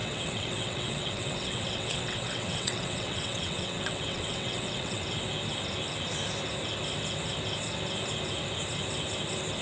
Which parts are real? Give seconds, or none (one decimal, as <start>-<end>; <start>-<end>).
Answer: 5.0-9.6